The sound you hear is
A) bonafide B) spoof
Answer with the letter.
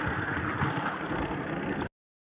A